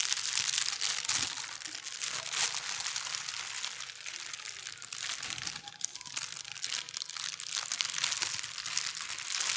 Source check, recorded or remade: recorded